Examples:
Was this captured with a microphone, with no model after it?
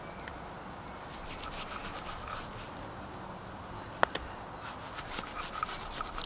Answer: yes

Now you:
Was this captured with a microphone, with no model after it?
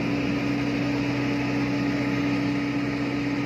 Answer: yes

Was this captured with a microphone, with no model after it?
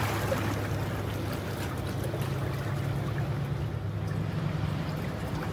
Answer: yes